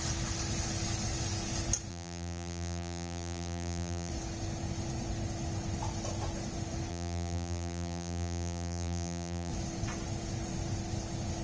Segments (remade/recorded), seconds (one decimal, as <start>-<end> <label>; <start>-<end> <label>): 0.0-1.9 recorded; 1.9-4.1 remade; 4.1-6.9 recorded; 6.9-9.5 remade; 9.5-11.4 recorded